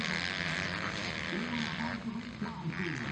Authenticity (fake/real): real